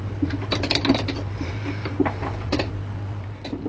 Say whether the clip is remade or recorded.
recorded